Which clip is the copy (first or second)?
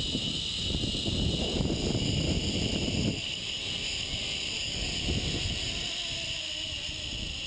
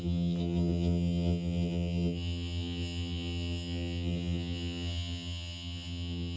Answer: second